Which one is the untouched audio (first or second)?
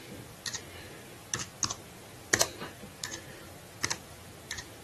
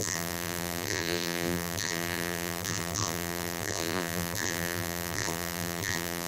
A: first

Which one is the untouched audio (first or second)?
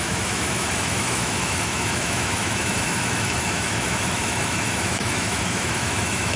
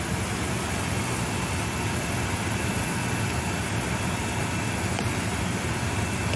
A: second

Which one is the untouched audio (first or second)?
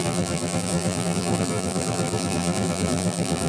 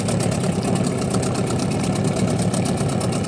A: second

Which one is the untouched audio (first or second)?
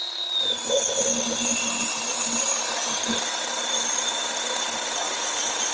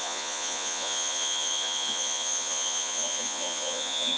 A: first